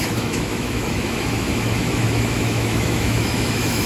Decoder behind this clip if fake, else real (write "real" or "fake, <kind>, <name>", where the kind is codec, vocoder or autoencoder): fake, autoencoder, DAC-VAE